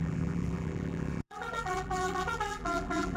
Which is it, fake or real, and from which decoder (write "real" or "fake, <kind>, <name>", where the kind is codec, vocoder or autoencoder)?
fake, vocoder, BigVGAN v2